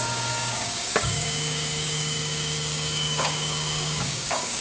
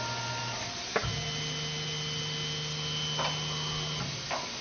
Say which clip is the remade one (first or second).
first